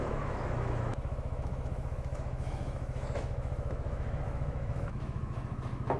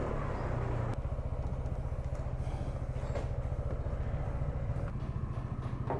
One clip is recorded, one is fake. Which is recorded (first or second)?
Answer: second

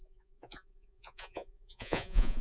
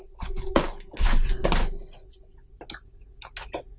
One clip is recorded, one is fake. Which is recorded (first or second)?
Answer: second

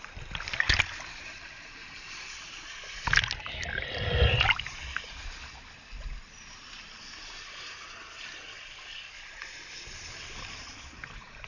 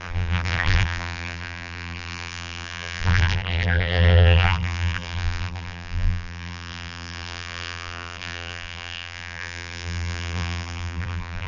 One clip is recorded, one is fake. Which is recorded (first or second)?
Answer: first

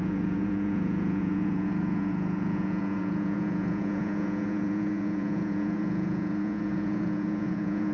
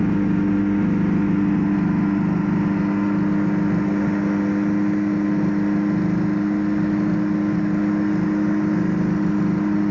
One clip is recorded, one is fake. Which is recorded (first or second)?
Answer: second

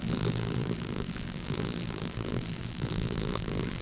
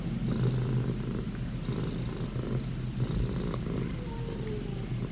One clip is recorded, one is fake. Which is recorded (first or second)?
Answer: second